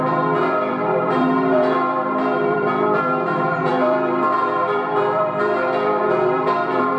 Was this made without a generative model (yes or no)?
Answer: no